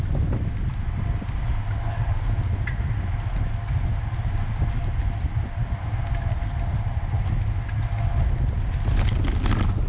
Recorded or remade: recorded